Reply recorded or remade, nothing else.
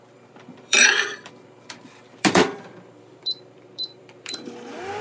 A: remade